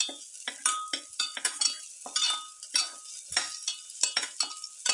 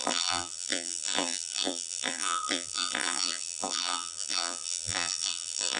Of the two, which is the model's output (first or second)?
second